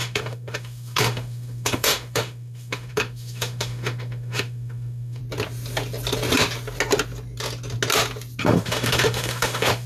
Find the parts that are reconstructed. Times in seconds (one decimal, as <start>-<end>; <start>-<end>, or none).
0.0-5.2; 8.4-9.9